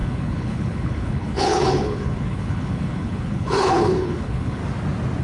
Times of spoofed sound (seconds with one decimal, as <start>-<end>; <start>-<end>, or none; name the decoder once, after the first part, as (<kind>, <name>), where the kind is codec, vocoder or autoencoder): 0.0-4.6 (codec, HILCodec)